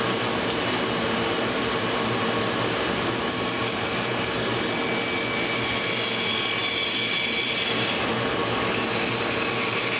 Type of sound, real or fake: real